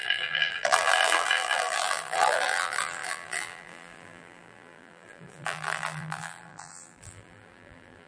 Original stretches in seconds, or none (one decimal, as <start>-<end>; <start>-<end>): none